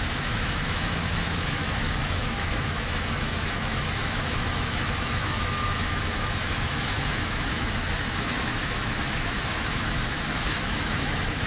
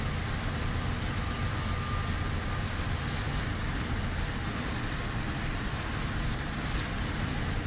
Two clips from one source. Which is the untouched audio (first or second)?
second